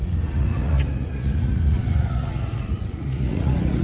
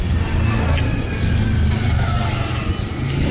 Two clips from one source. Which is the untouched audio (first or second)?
second